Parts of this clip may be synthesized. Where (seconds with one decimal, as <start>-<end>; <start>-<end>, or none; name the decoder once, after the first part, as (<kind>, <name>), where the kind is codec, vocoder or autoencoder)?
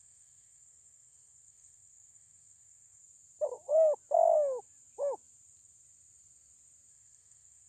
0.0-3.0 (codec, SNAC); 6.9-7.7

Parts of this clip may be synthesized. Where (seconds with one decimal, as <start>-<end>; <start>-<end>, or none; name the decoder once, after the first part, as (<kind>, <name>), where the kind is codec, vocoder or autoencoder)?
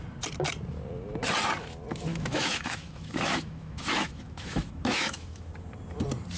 2.1-5.5 (autoencoder, DAC-VAE)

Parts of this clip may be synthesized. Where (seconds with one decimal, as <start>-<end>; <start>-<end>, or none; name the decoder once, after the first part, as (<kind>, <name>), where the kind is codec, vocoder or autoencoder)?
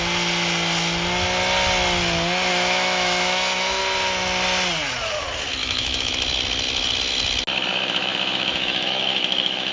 2.5-3.8 (autoencoder, DAC-VAE); 5.6-6.1; 7.7-9.7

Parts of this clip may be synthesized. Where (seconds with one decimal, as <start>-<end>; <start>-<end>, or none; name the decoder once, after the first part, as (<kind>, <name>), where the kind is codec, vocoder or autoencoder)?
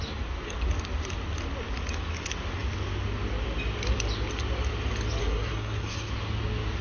5.2-6.1 (codec, SNAC)